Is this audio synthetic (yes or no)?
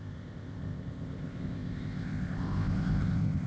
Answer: yes